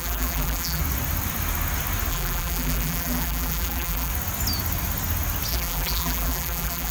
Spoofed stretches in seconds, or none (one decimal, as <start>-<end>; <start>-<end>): 0.0-0.8; 2.1-4.1; 5.5-6.9